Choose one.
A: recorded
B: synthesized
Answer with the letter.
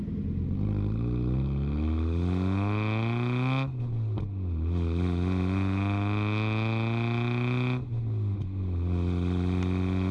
A